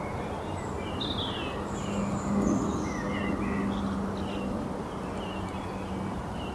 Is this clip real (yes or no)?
yes